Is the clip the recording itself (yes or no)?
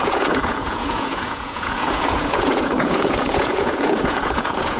no